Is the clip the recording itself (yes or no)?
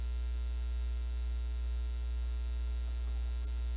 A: yes